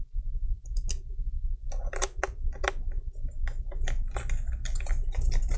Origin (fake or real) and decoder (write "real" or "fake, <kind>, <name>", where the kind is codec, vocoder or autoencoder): real